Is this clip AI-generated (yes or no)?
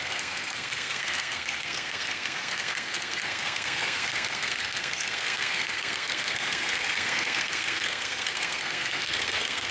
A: yes